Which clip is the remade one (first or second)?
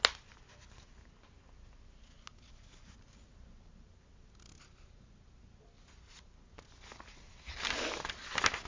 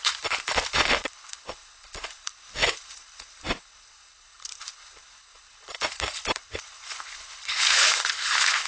second